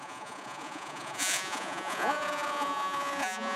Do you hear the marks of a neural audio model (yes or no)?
yes